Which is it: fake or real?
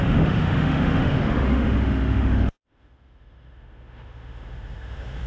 fake